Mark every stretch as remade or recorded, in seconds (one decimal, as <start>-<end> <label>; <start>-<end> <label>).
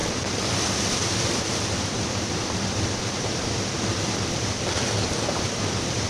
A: 0.0-6.1 recorded